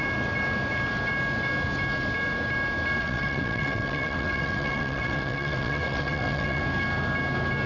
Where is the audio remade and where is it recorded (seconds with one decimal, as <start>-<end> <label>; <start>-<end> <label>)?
0.0-3.0 recorded; 3.0-6.6 remade; 6.6-7.7 recorded